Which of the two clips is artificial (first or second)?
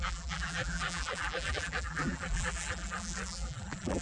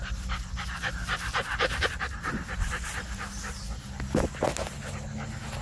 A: first